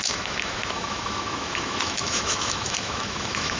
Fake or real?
fake